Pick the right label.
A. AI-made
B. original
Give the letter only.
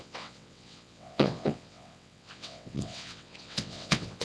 A